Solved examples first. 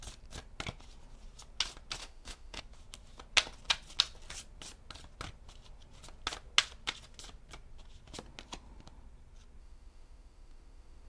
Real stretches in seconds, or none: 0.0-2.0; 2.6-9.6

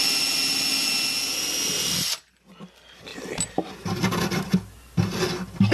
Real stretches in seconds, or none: 0.0-5.7

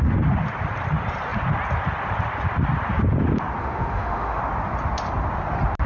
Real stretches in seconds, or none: 0.0-3.6; 4.4-5.9